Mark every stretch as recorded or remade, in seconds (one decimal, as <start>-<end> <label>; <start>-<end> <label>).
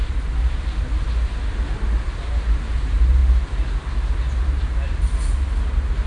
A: 0.0-1.0 remade; 1.0-6.1 recorded